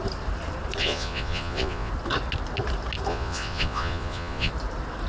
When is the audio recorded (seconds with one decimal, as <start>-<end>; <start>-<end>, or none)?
0.0-0.8; 1.9-3.1; 4.5-5.1

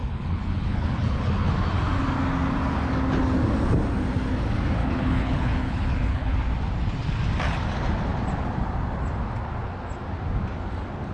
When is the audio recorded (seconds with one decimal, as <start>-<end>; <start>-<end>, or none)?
1.5-4.8; 6.3-11.1

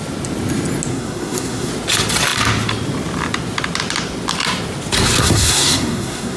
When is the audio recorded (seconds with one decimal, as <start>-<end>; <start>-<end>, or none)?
0.0-0.9; 1.7-5.2

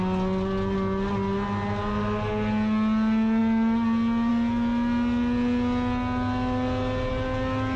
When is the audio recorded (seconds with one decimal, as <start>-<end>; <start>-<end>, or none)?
0.0-7.8

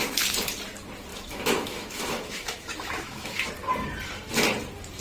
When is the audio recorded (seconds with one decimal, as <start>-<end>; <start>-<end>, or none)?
0.0-1.1; 3.5-5.0

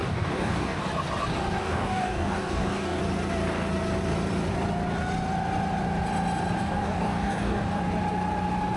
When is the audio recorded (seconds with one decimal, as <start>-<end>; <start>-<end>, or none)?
0.8-1.6; 3.0-6.6; 7.8-8.8

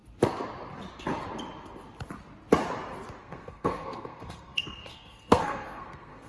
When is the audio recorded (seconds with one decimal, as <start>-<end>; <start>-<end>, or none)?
0.0-3.2

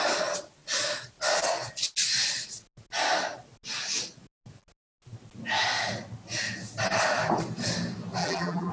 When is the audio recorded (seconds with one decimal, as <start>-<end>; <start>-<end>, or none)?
0.0-8.2